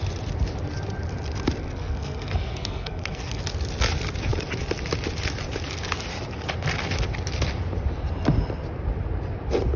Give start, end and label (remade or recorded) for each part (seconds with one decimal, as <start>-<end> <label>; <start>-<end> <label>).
0.0-1.6 recorded; 1.6-3.4 remade; 3.4-9.8 recorded